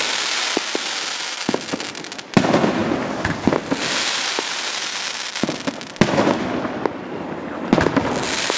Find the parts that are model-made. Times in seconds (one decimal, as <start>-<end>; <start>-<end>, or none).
none